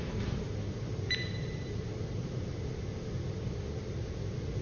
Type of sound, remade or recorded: recorded